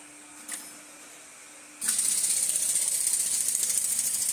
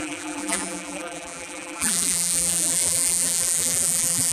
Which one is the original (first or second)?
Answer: first